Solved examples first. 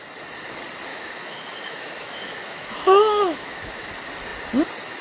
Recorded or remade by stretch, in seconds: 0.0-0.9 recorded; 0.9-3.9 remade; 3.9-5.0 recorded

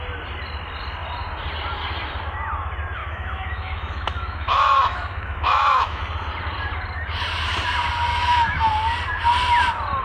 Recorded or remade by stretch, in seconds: 0.0-3.0 recorded; 3.0-6.0 remade; 6.0-8.1 recorded; 8.1-8.7 remade; 8.7-10.0 recorded